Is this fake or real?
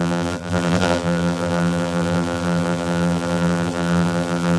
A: fake